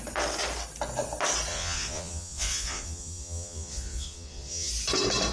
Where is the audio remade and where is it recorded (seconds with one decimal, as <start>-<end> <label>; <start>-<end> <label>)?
0.0-1.5 recorded; 1.5-4.7 remade; 4.7-5.3 recorded